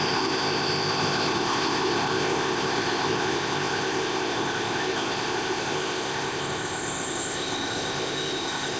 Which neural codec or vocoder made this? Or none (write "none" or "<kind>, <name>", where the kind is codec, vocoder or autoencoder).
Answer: codec, ZipCodec